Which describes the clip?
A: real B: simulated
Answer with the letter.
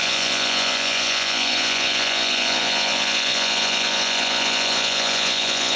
B